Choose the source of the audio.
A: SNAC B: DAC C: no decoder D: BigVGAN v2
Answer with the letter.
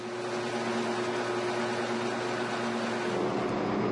C